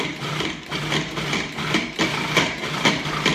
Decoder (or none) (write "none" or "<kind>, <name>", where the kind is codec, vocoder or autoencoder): vocoder, BigVGAN v2